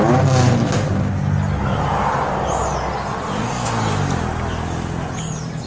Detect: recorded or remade recorded